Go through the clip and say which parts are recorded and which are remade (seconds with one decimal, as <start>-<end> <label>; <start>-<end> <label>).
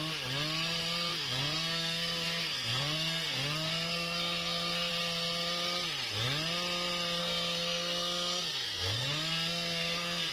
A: 0.0-1.1 recorded; 1.1-4.9 remade; 4.9-7.2 recorded; 7.2-10.3 remade